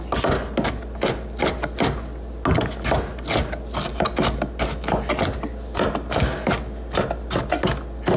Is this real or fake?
real